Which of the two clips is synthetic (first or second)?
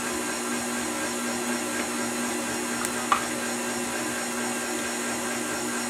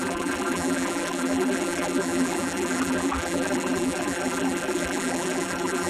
second